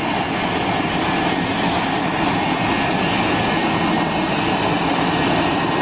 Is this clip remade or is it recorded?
recorded